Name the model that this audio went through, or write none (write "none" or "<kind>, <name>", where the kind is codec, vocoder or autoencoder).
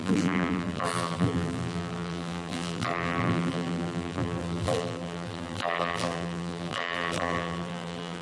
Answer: vocoder, BigVGAN v2